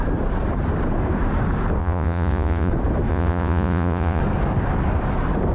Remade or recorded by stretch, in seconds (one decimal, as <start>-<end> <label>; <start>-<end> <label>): 0.0-1.8 recorded; 1.8-2.7 remade; 2.7-3.1 recorded; 3.1-4.2 remade; 4.2-5.5 recorded